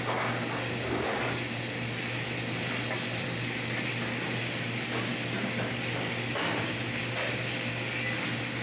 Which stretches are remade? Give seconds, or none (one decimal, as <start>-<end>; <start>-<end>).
none